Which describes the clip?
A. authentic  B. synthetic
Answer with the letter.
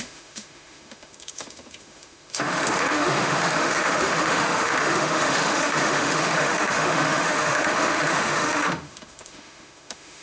B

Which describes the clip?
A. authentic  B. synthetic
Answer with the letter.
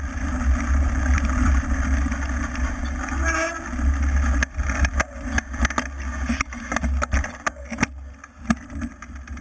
A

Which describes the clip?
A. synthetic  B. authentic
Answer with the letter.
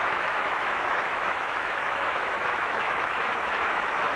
A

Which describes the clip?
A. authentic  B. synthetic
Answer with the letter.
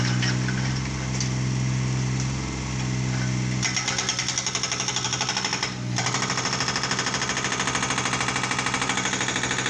A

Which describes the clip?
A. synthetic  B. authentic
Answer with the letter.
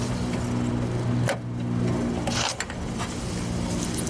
B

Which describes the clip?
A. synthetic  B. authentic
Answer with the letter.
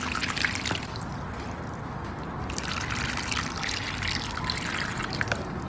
B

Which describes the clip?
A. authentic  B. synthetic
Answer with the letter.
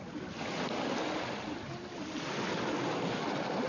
A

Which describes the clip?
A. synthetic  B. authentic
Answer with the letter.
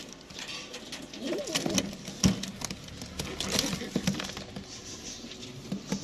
B